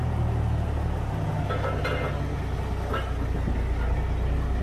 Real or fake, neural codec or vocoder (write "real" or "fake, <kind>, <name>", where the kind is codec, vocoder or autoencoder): real